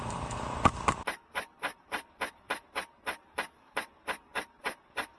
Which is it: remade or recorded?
recorded